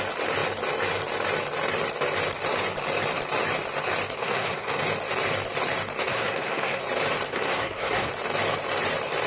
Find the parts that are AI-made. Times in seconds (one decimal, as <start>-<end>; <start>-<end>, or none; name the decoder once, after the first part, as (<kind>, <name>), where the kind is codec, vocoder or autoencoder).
4.2-4.8 (codec, SNAC); 6.1-6.8; 7.3-8.1